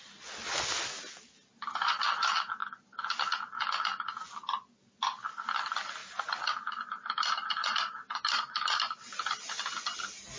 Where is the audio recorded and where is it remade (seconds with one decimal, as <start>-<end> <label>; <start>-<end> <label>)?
0.0-6.0 recorded; 6.0-6.7 remade; 6.7-7.6 recorded; 7.6-9.5 remade; 9.5-10.4 recorded